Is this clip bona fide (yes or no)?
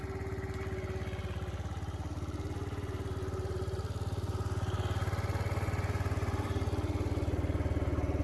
yes